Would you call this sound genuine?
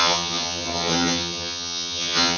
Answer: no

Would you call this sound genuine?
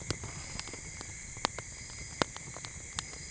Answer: yes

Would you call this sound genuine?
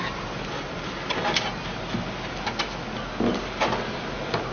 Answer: yes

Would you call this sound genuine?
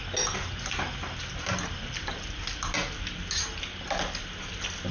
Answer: yes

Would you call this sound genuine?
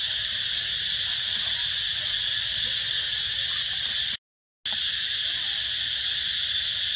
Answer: yes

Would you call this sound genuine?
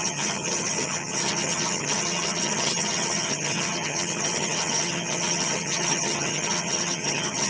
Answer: no